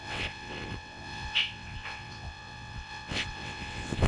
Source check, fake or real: fake